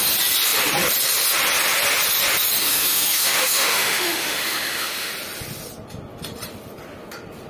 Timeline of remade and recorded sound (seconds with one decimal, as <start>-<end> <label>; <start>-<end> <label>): 0.0-2.6 recorded; 2.6-5.1 remade; 5.1-7.5 recorded